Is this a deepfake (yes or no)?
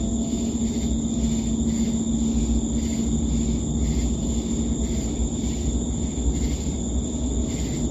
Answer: no